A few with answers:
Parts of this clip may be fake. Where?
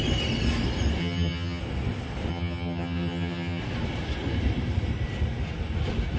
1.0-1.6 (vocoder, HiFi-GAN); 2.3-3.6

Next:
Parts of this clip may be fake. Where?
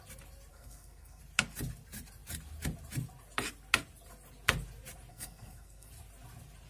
0.5-1.2 (codec, SNAC); 5.1-5.9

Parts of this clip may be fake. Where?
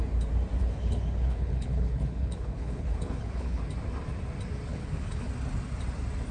0.6-3.6 (codec, HILCodec); 4.7-5.3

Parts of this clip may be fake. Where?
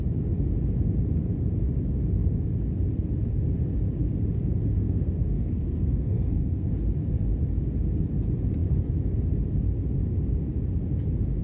4.7-6.7 (codec, SNAC)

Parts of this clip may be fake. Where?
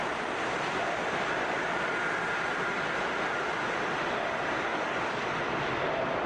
4.7-5.4 (codec, DAC)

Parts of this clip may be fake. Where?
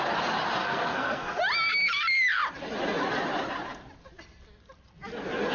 0.6-1.4 (codec, SNAC)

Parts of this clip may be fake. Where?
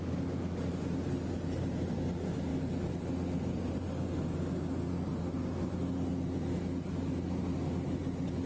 none